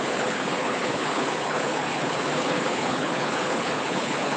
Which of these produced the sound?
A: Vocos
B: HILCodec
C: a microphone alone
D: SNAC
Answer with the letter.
B